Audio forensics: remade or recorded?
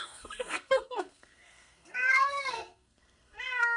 remade